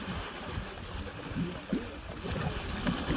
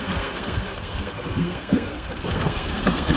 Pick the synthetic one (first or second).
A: second